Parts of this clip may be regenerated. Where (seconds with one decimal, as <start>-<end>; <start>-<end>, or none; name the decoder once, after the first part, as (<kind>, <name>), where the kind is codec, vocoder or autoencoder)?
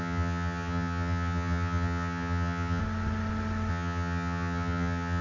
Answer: 0.0-2.8 (vocoder, HiFi-GAN); 3.7-5.2